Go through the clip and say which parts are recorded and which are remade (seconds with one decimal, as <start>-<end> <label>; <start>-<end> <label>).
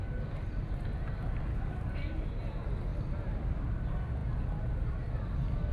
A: 0.0-1.5 recorded; 1.5-2.3 remade; 2.3-5.7 recorded